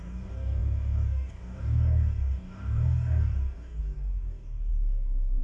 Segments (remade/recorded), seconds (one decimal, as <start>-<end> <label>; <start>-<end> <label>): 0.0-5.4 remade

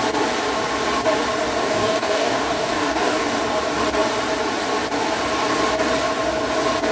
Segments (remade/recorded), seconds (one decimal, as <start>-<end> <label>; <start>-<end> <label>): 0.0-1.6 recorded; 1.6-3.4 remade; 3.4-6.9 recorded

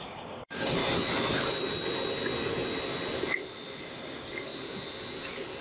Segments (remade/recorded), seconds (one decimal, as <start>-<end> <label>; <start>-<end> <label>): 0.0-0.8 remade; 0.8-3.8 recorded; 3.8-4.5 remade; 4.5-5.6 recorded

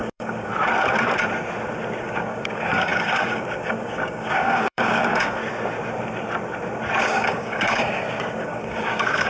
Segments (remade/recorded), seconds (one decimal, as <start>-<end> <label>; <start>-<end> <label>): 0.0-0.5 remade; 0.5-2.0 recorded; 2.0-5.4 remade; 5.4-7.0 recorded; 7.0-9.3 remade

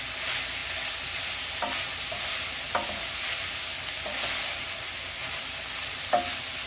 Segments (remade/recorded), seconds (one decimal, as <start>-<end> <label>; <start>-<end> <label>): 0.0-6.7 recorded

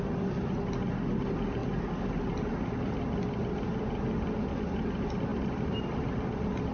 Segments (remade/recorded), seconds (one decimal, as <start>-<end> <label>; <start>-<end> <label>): 0.0-6.7 recorded